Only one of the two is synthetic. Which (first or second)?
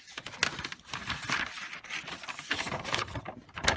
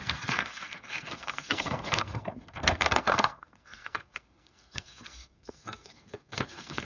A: second